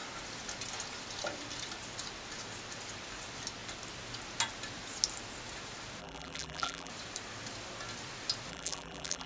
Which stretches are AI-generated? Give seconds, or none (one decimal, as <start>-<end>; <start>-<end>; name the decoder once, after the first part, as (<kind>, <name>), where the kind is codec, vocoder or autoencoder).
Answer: 6.0-6.9 (vocoder, BigVGAN v2); 8.5-9.3